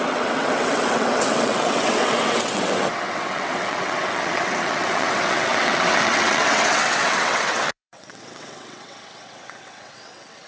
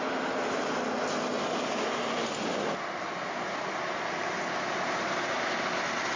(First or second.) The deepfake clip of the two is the first